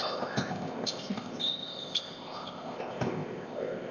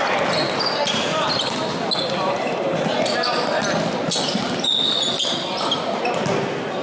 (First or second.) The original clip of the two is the second